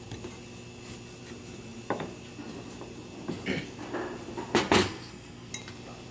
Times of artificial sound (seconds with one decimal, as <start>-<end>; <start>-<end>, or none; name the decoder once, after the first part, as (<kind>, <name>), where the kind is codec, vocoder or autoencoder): 4.8-5.5 (codec, SNAC)